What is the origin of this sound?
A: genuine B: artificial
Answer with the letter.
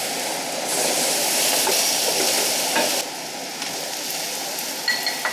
A